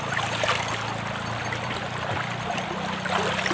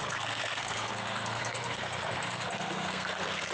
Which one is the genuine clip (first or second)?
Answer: first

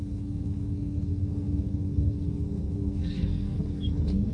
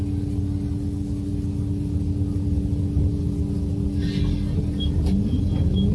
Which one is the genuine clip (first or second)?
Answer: second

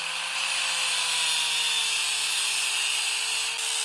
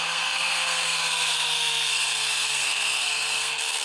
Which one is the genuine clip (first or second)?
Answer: first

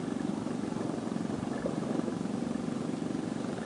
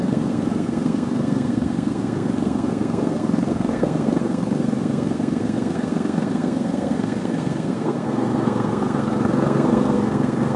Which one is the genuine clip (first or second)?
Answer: first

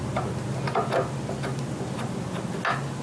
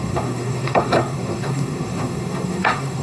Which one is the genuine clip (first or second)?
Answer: first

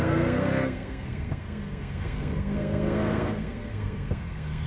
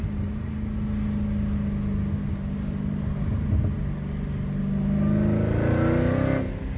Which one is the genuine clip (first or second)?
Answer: second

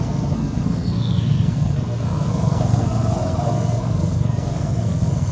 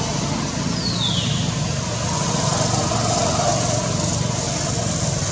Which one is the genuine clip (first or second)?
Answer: second